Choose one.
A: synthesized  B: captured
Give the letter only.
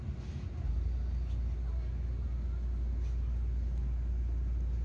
B